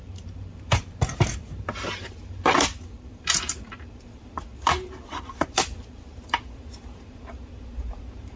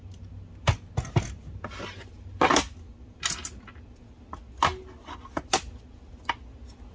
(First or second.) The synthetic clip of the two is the first